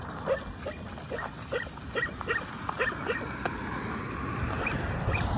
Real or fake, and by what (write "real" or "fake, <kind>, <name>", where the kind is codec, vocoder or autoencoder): real